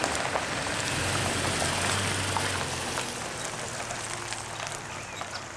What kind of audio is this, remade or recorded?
recorded